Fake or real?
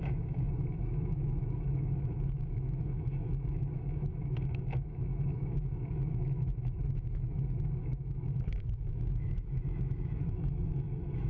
fake